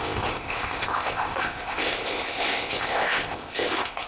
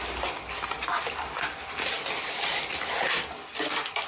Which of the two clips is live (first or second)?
second